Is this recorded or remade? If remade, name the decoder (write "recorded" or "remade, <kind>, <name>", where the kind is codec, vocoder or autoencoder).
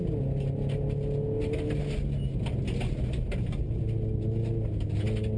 recorded